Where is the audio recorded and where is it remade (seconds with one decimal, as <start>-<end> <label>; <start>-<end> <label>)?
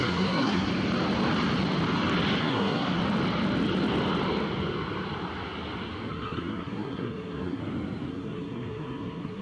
0.0-0.7 remade; 0.7-2.4 recorded; 2.4-3.0 remade; 3.0-6.1 recorded; 6.1-7.6 remade; 7.6-8.1 recorded; 8.1-9.4 remade